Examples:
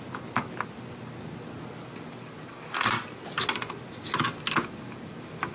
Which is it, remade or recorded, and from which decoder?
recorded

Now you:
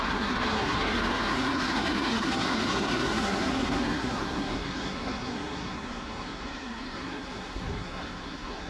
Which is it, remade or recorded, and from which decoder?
remade, codec, SNAC